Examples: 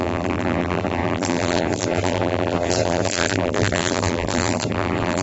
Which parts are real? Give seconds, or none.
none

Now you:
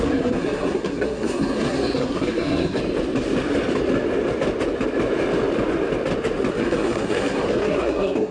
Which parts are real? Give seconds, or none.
2.8-6.5

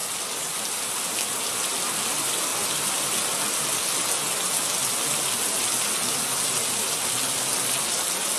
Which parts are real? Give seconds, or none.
0.0-8.4

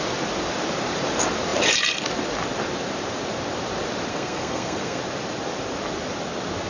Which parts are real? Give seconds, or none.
0.0-4.1; 5.0-6.7

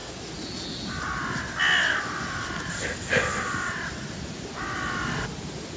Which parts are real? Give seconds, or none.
0.0-5.8